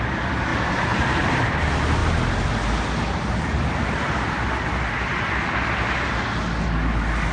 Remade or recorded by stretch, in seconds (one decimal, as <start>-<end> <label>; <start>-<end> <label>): 0.0-7.3 recorded